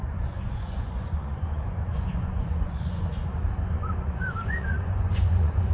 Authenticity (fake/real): fake